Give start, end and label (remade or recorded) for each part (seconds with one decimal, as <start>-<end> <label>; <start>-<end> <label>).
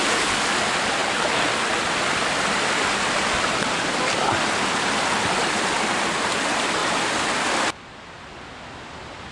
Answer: 0.0-1.0 recorded; 1.0-3.9 remade; 3.9-6.8 recorded; 6.8-9.3 remade